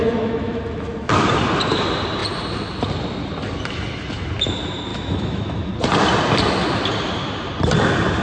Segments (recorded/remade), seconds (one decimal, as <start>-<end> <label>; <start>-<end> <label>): 0.0-1.1 remade; 1.1-4.9 recorded; 4.9-5.7 remade; 5.7-8.2 recorded